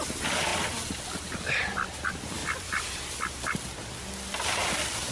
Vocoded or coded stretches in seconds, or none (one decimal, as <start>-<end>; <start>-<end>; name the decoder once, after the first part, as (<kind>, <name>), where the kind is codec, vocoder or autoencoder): none